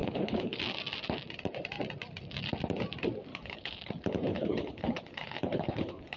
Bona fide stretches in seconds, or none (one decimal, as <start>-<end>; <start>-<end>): 0.6-3.3; 3.9-4.3